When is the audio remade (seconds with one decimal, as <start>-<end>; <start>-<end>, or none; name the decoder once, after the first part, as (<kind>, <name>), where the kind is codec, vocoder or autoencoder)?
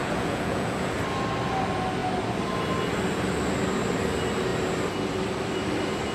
0.0-1.0 (vocoder, Vocos)